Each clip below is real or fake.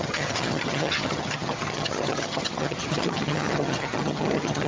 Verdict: fake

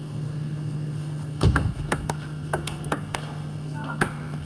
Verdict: fake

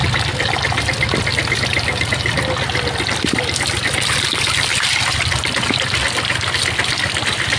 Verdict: real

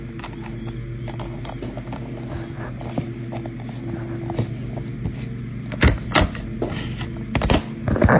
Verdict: real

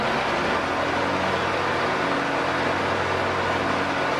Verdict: real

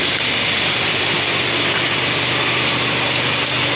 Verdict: real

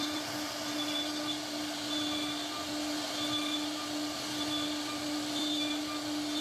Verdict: real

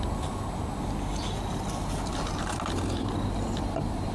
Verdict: real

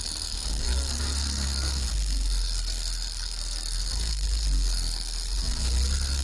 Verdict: fake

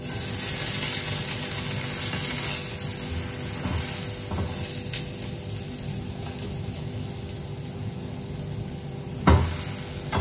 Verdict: real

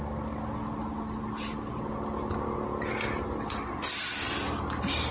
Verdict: real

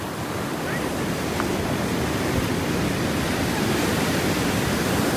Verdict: real